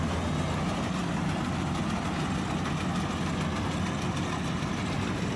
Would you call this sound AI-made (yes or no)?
no